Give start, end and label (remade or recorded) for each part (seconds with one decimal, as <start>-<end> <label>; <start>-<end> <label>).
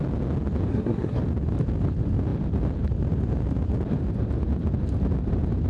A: 0.0-0.7 recorded; 0.7-1.2 remade; 1.2-5.7 recorded